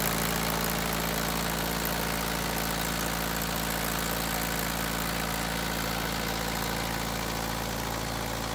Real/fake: real